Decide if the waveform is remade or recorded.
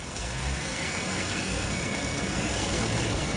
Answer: remade